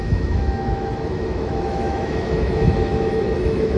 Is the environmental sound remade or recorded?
remade